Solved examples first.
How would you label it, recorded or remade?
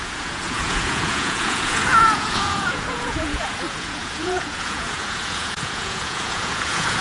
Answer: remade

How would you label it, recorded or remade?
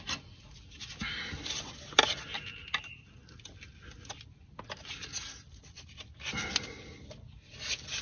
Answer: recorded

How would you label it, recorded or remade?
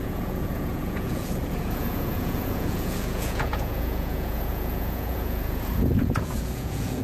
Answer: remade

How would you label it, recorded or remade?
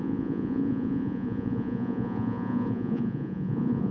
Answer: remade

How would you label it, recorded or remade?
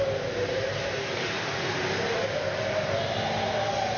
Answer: recorded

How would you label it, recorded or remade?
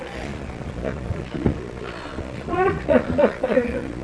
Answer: remade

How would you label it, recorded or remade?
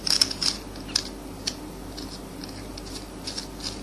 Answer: recorded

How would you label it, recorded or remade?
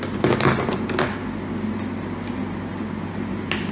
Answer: recorded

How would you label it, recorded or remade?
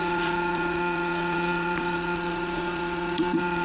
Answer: remade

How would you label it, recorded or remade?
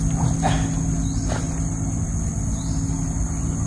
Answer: recorded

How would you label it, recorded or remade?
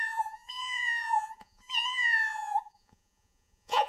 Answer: remade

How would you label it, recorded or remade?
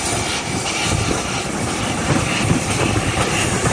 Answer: recorded